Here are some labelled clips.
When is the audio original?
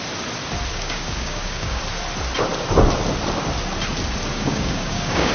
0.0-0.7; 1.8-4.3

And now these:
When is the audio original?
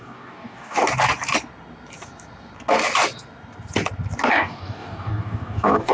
0.8-4.3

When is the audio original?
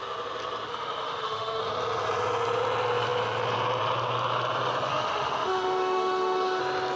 0.0-0.7; 1.6-4.9; 6.6-7.0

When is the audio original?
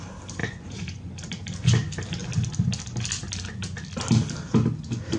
0.0-0.4; 1.1-5.2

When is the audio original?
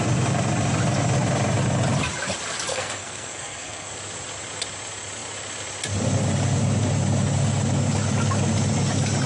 0.0-2.7; 3.9-9.3